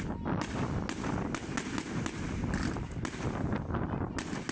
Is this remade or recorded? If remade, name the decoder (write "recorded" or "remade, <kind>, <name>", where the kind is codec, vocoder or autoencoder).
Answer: recorded